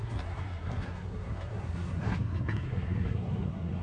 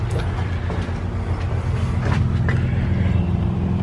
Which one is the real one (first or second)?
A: second